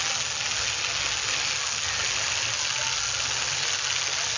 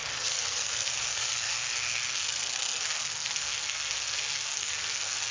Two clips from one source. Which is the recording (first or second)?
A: first